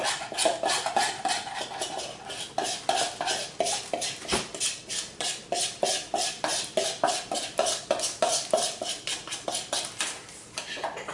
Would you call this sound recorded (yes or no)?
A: no